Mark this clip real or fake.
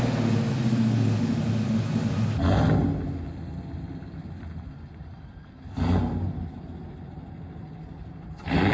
real